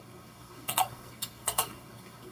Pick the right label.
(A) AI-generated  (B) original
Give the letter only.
A